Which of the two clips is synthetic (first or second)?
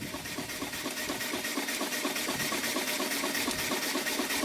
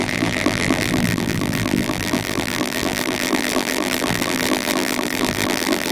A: second